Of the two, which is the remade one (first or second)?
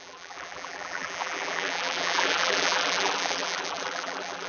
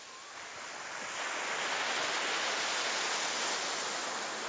first